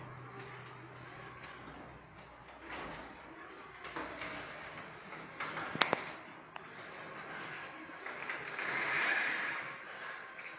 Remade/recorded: recorded